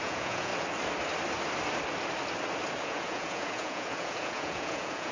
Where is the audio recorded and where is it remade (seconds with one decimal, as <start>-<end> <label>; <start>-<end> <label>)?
0.0-0.5 remade; 0.5-2.8 recorded; 2.8-5.1 remade